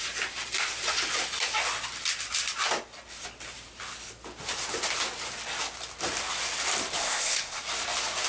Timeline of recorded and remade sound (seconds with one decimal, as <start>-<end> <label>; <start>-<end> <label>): 0.0-7.0 recorded; 7.0-7.6 remade; 7.6-8.3 recorded